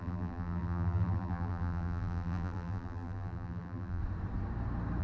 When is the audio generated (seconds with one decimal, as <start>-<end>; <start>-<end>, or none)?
0.0-4.0